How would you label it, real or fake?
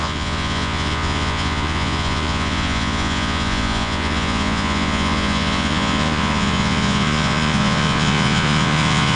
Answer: fake